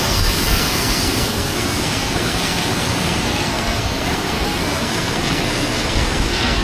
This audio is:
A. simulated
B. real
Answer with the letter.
A